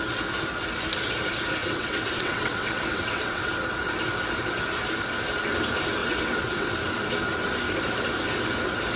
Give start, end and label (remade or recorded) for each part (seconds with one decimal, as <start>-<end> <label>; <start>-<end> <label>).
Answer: 0.0-1.6 recorded; 1.6-3.6 remade; 3.6-6.0 recorded; 6.0-6.7 remade; 6.7-9.0 recorded